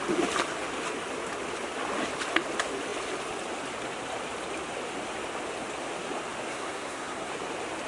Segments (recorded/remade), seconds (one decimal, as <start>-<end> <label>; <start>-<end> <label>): 0.0-6.5 recorded; 6.5-7.3 remade; 7.3-7.9 recorded